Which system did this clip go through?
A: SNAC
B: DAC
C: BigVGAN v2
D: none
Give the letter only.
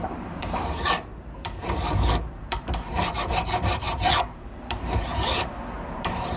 C